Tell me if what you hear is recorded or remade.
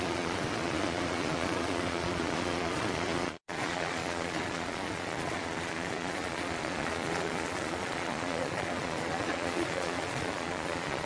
remade